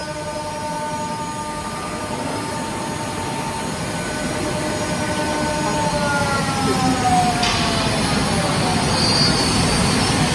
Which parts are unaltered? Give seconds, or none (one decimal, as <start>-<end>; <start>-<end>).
1.2-10.3